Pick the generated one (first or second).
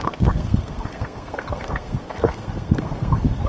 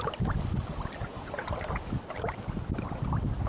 first